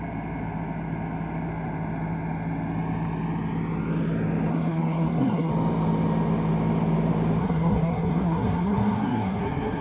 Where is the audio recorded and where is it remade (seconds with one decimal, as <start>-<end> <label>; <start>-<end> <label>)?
0.0-4.5 recorded; 4.5-5.5 remade; 5.5-7.4 recorded; 7.4-9.8 remade